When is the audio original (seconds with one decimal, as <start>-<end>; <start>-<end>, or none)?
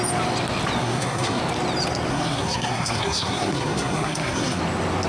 0.0-0.8; 1.4-2.1; 4.6-5.1